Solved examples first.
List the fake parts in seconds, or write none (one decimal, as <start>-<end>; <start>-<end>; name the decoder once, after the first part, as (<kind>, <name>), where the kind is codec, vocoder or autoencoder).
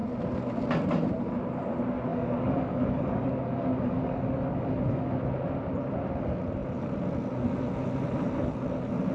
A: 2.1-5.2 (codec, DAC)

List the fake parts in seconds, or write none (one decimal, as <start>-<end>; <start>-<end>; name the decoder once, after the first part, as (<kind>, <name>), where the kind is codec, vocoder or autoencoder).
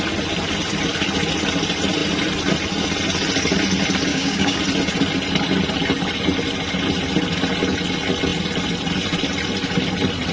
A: 4.1-4.6 (codec, DAC)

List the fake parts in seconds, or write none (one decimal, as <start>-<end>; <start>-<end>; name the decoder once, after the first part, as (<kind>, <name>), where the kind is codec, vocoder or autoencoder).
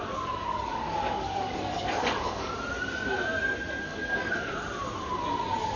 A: 0.5-2.5 (codec, DAC); 3.9-4.5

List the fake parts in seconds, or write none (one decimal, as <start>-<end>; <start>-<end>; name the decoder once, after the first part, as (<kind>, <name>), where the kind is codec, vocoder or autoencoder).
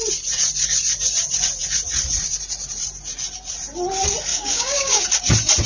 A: 4.3-5.0 (codec, DAC)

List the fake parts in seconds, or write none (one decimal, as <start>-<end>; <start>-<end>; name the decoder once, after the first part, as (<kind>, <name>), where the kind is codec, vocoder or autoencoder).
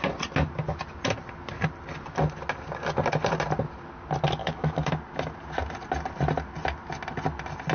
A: 4.4-4.9 (codec, DAC)